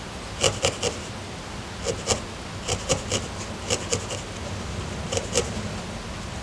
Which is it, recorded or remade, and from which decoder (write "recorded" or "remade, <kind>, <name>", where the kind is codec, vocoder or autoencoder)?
recorded